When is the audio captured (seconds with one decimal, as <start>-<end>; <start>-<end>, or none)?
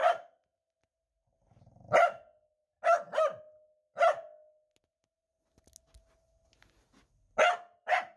0.6-8.2